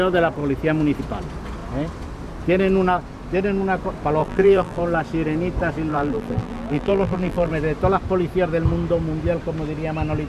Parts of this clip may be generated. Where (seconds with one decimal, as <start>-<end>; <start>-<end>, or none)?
4.2-4.8; 5.9-7.5